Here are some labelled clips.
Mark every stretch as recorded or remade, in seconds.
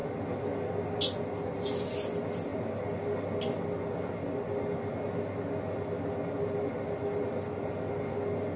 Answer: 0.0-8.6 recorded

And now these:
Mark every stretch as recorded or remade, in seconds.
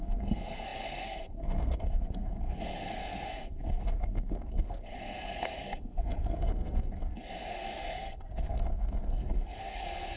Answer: 0.0-10.2 remade